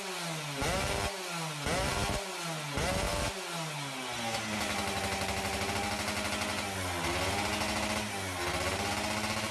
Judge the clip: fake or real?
real